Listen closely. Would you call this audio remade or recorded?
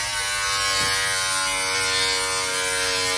recorded